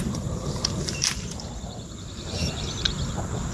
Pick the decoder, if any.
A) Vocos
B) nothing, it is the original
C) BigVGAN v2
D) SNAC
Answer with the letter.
C